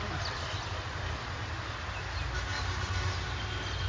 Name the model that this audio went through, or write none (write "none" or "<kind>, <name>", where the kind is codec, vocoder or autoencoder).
none